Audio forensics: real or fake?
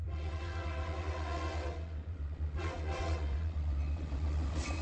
fake